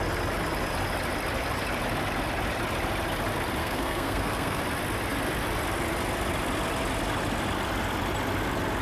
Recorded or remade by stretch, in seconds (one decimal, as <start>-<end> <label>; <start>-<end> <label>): 0.0-3.6 recorded; 3.6-4.6 remade; 4.6-8.8 recorded